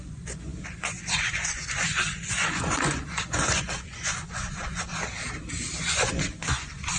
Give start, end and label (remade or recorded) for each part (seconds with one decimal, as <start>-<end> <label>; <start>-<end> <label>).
0.0-4.9 remade; 4.9-5.7 recorded; 5.7-7.0 remade